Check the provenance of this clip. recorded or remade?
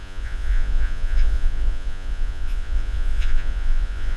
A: remade